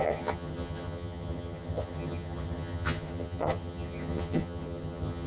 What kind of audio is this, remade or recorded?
remade